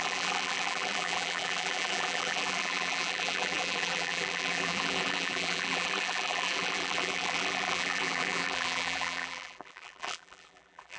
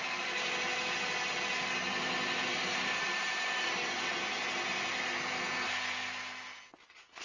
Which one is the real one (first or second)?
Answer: second